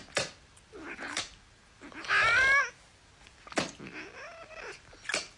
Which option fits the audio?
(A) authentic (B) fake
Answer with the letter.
A